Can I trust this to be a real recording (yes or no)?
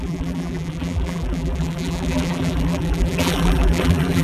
no